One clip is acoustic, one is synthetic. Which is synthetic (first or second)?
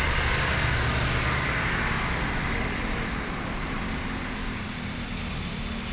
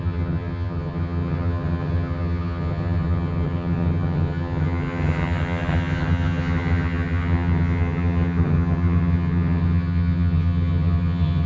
second